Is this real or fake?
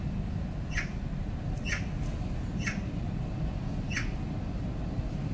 real